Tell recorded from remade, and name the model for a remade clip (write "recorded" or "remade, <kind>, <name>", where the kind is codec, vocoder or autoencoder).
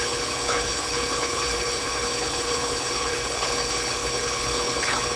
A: remade, codec, HILCodec